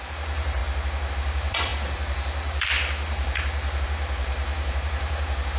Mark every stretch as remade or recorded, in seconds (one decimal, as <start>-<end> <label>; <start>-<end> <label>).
0.0-0.6 remade; 0.6-1.1 recorded; 1.1-5.6 remade

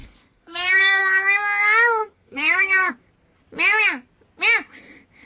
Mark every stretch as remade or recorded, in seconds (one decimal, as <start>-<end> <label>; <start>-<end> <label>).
0.0-1.0 remade; 1.0-2.0 recorded; 2.0-2.9 remade; 2.9-5.3 recorded

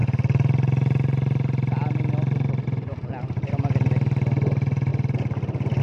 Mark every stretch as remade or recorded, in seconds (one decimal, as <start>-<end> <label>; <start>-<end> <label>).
0.0-5.8 recorded

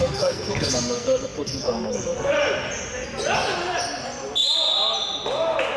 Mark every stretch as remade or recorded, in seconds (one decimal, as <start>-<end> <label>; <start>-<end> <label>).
0.0-2.3 remade; 2.3-5.8 recorded

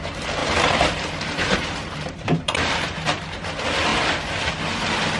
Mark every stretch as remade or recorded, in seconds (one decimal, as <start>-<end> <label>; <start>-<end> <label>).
0.0-0.4 recorded; 0.4-3.5 remade; 3.5-5.2 recorded

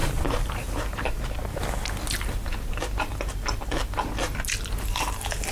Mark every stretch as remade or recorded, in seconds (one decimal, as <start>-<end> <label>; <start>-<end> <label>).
0.0-1.2 remade; 1.2-5.5 recorded

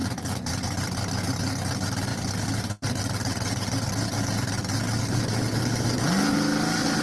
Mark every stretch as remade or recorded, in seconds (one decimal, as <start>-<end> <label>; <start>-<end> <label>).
0.0-7.0 recorded

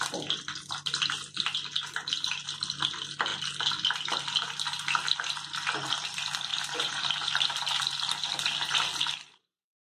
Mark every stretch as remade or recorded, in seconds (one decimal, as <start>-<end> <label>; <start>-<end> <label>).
0.0-6.5 recorded; 6.5-8.1 remade; 8.1-10.0 recorded